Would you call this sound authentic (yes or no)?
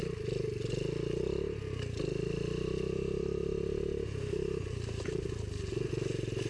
yes